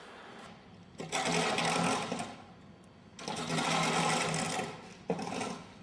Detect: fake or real real